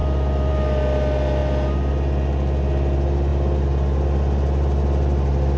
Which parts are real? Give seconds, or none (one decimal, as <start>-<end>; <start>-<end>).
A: 0.0-5.6